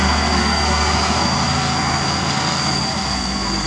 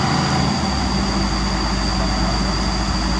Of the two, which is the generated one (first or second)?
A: first